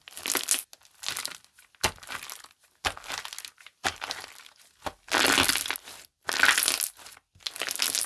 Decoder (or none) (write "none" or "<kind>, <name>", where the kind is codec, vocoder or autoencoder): none